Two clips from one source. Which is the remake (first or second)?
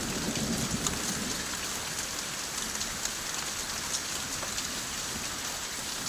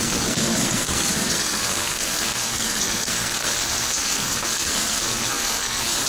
second